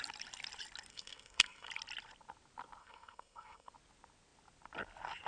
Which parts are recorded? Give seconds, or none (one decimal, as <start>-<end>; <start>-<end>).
0.0-0.9; 1.7-2.8; 3.7-5.3